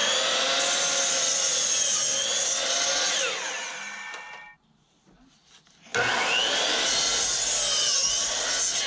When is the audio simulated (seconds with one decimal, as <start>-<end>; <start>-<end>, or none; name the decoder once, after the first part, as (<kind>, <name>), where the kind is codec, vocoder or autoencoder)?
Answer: none